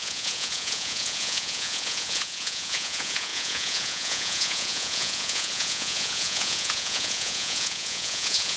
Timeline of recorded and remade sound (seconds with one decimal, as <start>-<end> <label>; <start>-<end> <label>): 0.0-8.6 remade